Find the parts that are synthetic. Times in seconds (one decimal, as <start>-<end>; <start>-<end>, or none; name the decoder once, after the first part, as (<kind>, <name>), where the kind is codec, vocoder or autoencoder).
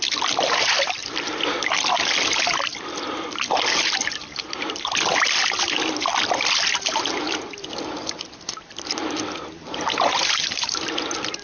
0.0-1.0 (vocoder, BigVGAN v2); 4.5-5.1; 7.6-11.4